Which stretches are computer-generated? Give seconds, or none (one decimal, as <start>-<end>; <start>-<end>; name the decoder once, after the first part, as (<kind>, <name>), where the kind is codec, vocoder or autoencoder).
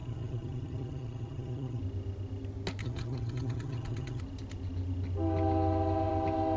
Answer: 0.0-1.8 (vocoder, HiFi-GAN); 2.8-4.2